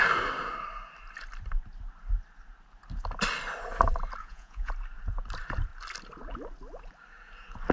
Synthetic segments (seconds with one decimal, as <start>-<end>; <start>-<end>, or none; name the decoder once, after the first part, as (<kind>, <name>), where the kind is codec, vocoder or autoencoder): 4.2-4.7 (vocoder, Vocos)